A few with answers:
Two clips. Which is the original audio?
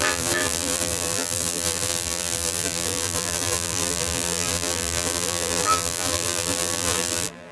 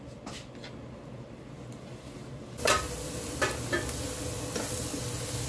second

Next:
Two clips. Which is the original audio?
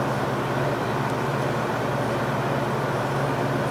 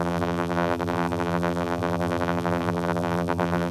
first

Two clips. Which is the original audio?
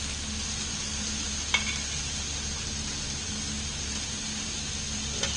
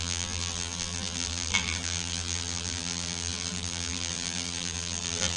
first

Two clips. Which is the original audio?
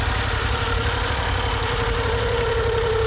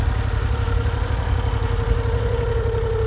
second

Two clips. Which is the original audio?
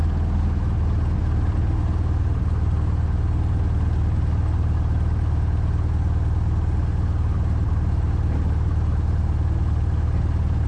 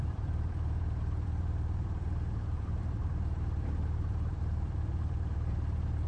first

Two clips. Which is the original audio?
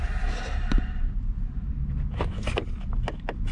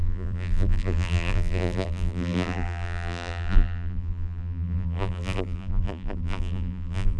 first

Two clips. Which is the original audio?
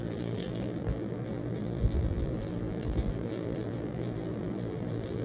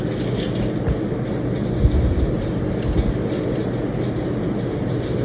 second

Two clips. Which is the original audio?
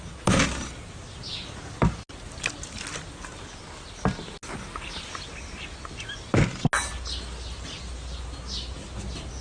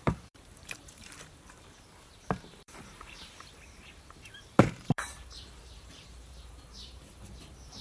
first